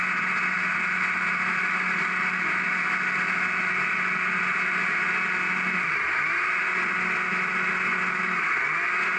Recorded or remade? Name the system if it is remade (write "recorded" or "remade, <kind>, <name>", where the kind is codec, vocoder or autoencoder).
recorded